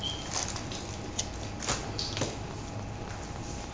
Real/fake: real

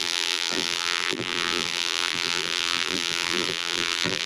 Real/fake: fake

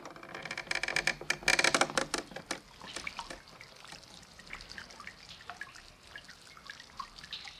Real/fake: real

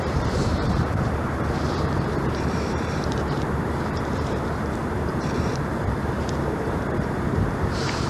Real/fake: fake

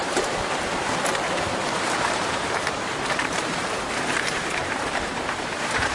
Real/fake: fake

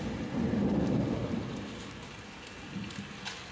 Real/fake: real